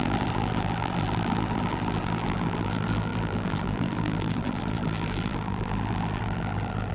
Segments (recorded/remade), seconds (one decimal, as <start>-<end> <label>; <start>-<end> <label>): 0.0-6.9 remade